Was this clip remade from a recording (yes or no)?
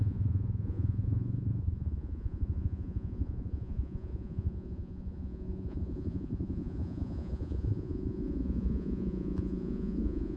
yes